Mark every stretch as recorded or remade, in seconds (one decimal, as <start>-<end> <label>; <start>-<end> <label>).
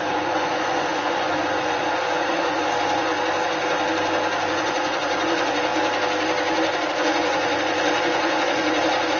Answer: 0.0-3.1 remade; 3.1-4.5 recorded; 4.5-5.7 remade; 5.7-6.9 recorded; 6.9-9.2 remade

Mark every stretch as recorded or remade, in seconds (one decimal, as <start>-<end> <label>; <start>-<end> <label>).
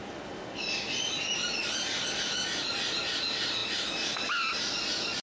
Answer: 0.0-3.1 recorded; 3.1-3.6 remade; 3.6-5.2 recorded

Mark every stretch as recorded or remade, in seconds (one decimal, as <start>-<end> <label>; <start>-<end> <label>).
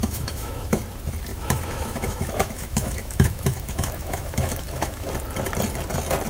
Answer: 0.0-0.8 remade; 0.8-1.3 recorded; 1.3-5.1 remade; 5.1-6.3 recorded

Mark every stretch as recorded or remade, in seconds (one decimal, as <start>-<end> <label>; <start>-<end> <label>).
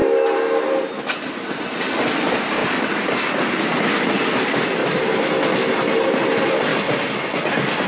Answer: 0.0-7.9 recorded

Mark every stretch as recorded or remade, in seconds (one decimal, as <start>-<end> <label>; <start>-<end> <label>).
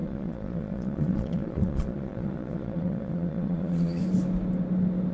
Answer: 0.0-4.0 remade; 4.0-5.1 recorded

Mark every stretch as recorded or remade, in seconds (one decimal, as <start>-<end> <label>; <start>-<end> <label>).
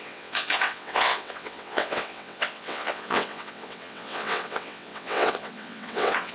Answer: 0.0-6.3 remade